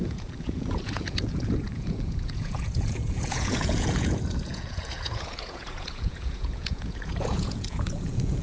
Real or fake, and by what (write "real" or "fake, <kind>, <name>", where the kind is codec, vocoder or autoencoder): fake, vocoder, Vocos